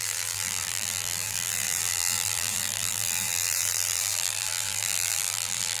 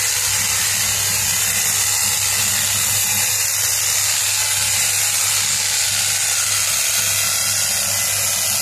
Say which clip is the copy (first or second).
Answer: first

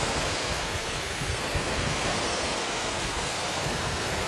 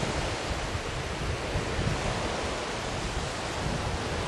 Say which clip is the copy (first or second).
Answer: first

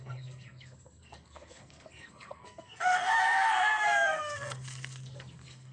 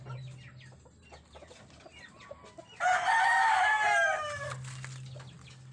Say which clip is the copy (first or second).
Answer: first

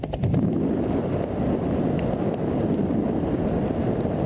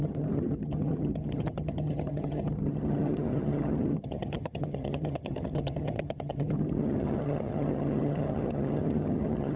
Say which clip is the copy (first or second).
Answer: second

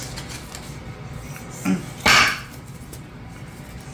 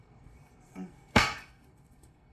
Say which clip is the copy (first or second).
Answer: second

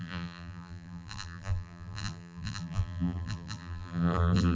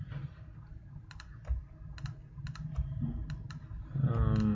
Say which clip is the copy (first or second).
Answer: first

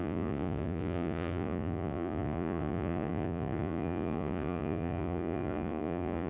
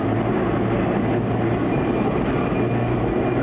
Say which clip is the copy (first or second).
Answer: first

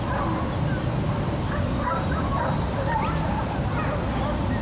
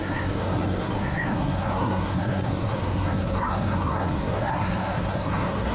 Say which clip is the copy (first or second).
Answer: second